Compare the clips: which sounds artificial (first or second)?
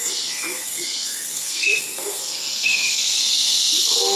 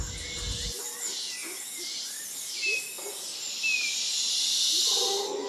first